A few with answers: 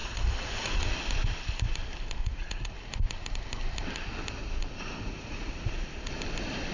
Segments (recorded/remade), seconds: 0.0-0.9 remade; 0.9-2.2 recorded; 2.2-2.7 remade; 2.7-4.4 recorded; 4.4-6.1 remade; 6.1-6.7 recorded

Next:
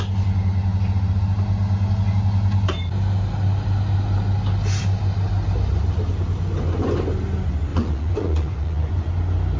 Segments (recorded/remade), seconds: 0.0-7.7 recorded; 7.7-9.1 remade; 9.1-9.6 recorded

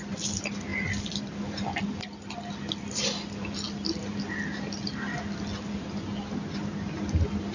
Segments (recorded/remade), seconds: 0.0-7.5 recorded

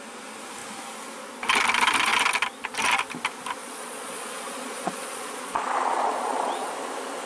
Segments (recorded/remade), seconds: 0.0-3.6 recorded; 3.6-6.7 remade; 6.7-7.3 recorded